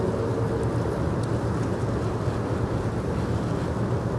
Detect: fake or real real